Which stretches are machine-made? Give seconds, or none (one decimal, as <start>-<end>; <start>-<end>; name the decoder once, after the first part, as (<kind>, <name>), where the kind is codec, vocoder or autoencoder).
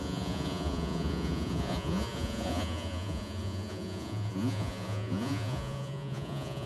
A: 0.0-6.7 (vocoder, Vocos)